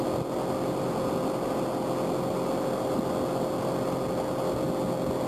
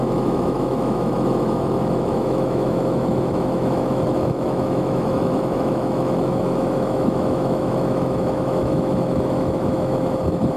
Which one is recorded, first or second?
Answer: first